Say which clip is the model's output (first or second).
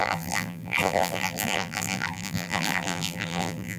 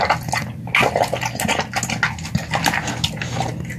first